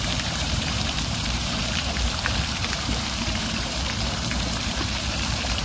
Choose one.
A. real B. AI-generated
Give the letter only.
B